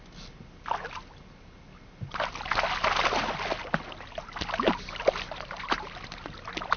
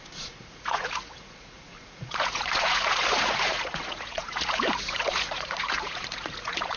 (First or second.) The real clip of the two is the first